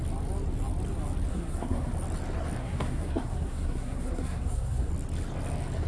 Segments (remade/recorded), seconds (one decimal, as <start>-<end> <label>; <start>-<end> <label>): 0.0-1.3 recorded; 1.3-1.9 remade; 1.9-2.6 recorded; 2.6-4.9 remade; 4.9-5.9 recorded